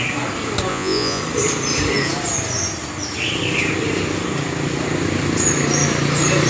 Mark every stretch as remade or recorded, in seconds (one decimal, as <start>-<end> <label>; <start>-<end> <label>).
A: 0.0-0.7 recorded; 0.7-1.2 remade; 1.2-6.5 recorded